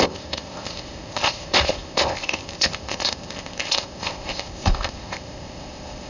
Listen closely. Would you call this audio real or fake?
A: fake